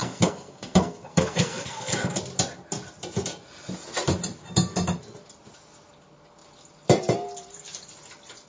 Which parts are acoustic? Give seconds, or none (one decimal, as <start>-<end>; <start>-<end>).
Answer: 2.2-8.5